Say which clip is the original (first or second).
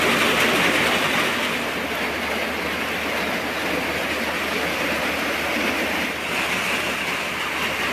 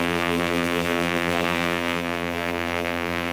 first